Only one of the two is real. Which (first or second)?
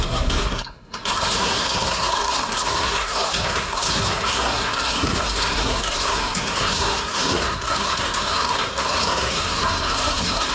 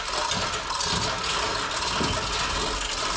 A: second